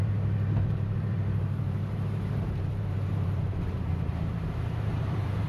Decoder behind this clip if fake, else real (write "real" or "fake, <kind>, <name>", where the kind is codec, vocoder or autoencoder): fake, vocoder, BigVGAN v2